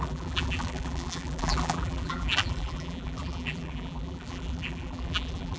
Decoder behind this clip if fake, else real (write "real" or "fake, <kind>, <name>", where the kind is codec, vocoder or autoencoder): fake, vocoder, BigVGAN v2